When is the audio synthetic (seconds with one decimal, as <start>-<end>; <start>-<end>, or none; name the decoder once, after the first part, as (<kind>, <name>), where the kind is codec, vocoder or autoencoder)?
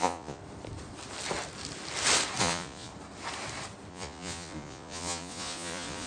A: 0.0-0.4 (vocoder, Vocos); 2.4-2.9; 3.9-6.1